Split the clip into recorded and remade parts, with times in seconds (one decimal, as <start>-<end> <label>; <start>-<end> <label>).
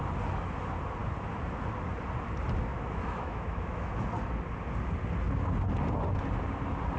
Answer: 0.0-2.7 recorded; 2.7-3.9 remade; 3.9-7.0 recorded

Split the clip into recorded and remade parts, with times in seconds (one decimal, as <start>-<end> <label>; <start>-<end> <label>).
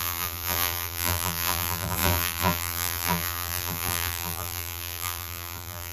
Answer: 0.0-5.9 remade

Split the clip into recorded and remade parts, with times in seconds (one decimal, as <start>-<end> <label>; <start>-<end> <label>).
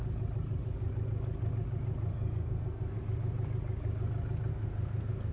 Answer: 0.0-2.1 recorded; 2.1-3.0 remade; 3.0-4.5 recorded; 4.5-5.3 remade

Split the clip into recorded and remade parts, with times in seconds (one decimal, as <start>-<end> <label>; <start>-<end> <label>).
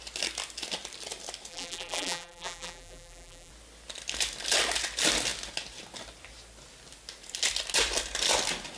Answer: 0.0-1.5 recorded; 1.5-3.5 remade; 3.5-8.8 recorded